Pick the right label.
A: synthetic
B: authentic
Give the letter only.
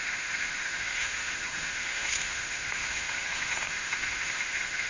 A